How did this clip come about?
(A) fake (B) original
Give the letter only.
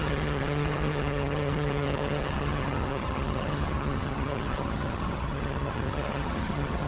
A